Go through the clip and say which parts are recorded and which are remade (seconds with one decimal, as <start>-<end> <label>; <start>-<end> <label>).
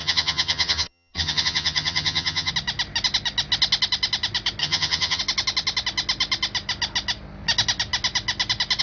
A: 0.0-2.5 remade; 2.5-4.6 recorded; 4.6-5.2 remade; 5.2-8.8 recorded